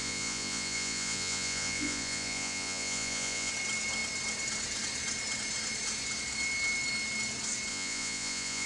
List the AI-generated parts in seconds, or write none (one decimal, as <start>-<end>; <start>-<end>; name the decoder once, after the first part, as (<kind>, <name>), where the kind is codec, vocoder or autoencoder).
0.0-3.5 (vocoder, Vocos); 7.7-8.7